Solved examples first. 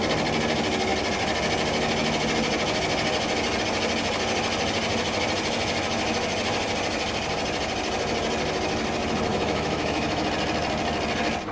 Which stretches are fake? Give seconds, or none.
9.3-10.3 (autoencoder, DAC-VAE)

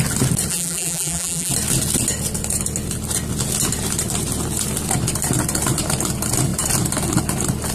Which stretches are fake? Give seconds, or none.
0.5-1.5 (vocoder, BigVGAN v2)

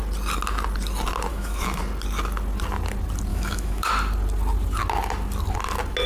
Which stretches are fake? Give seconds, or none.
1.3-1.8 (autoencoder, DAC-VAE); 3.3-3.9

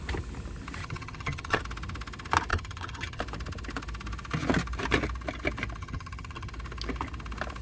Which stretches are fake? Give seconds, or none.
0.8-1.6 (vocoder, HiFi-GAN); 2.5-3.2; 5.8-6.5

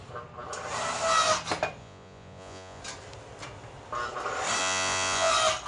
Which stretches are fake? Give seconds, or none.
1.8-2.8 (vocoder, Vocos); 4.6-5.3

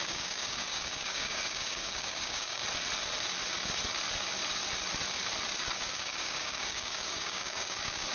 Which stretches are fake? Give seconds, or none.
0.0-2.6 (codec, DAC); 5.9-8.1

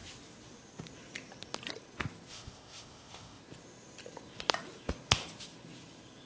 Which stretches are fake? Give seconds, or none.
2.3-3.4 (codec, ZipCodec)

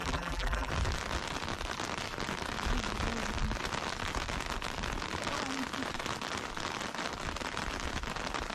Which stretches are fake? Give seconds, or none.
0.0-0.7 (vocoder, BigVGAN v2)